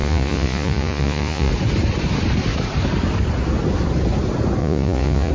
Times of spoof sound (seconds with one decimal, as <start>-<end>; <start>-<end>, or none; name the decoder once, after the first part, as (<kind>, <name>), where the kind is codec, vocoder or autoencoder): 0.0-1.5 (vocoder, Vocos); 4.6-5.3